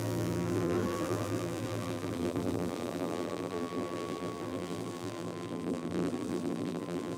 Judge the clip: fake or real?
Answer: fake